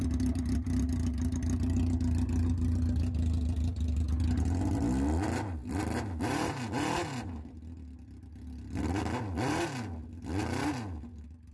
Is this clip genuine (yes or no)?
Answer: yes